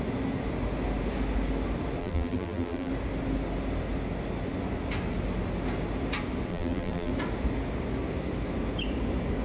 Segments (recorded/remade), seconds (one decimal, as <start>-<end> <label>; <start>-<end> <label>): 0.0-2.0 recorded; 2.0-2.9 remade; 2.9-6.5 recorded; 6.5-7.1 remade; 7.1-9.4 recorded